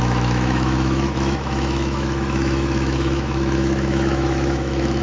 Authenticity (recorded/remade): remade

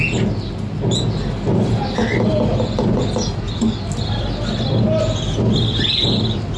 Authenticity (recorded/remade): recorded